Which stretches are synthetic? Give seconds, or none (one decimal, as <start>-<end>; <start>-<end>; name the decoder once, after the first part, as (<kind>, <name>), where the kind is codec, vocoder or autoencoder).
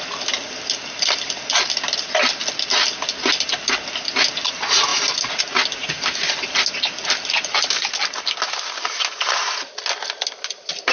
none